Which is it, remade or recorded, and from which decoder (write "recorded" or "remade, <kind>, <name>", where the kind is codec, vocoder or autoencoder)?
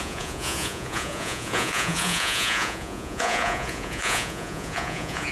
remade, vocoder, Vocos